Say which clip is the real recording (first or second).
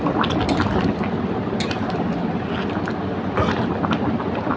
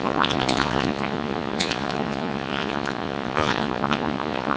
first